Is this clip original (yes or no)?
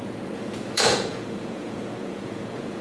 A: no